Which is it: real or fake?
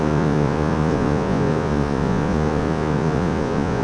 fake